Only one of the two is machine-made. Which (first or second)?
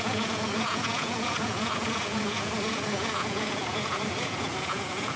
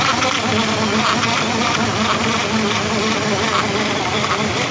first